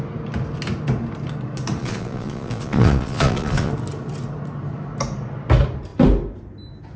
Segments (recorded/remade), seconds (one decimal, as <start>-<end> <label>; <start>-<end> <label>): 0.0-1.8 recorded; 1.8-3.7 remade; 3.7-7.0 recorded